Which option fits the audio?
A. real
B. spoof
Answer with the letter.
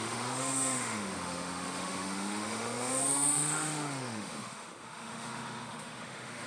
B